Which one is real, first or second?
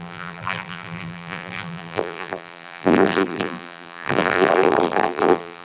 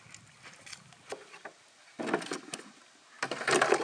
second